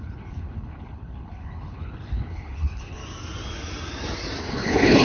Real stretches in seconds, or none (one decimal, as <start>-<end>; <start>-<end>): 3.0-4.4